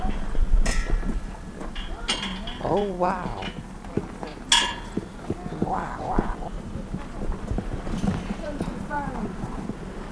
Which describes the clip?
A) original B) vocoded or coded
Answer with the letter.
A